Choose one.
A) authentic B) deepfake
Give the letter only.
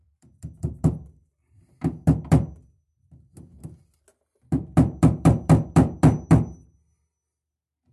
A